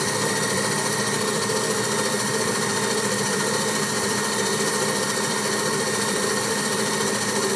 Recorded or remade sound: remade